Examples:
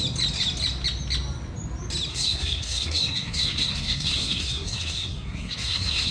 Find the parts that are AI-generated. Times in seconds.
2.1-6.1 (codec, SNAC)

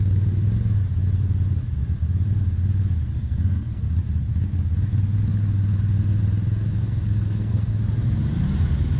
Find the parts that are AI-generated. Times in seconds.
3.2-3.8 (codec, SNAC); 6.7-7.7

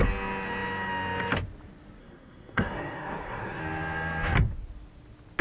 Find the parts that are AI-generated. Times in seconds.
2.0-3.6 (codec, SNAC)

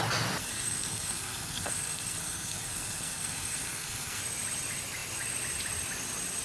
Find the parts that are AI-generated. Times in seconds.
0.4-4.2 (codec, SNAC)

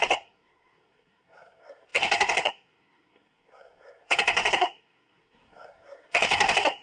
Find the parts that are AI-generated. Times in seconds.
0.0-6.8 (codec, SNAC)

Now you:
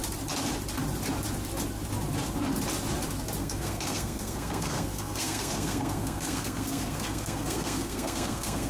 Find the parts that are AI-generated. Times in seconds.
3.4-8.7 (codec, SNAC)